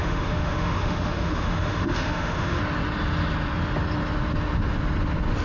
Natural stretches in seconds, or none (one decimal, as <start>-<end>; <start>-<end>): 2.6-5.4